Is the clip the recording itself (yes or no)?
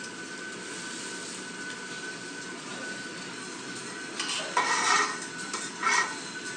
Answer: yes